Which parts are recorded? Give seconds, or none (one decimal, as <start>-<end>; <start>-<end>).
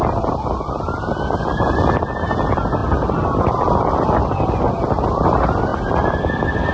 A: 0.0-2.8; 4.6-5.7